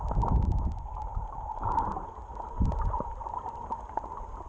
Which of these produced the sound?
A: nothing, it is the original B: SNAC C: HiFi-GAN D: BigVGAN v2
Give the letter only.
A